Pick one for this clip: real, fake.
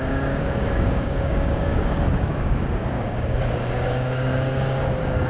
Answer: fake